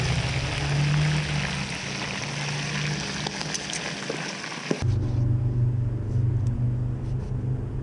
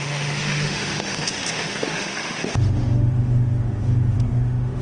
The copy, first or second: second